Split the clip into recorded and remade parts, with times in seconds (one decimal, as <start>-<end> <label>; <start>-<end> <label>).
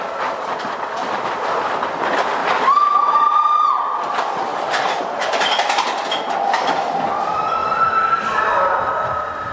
0.0-2.4 recorded; 2.4-3.5 remade; 3.5-4.5 recorded; 4.5-5.1 remade; 5.1-7.6 recorded; 7.6-8.6 remade; 8.6-9.5 recorded